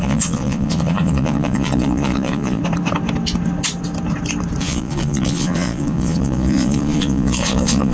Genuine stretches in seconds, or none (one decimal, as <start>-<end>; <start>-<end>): 2.6-4.6